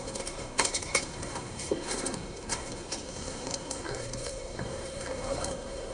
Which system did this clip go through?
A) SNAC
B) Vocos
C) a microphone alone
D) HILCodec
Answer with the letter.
A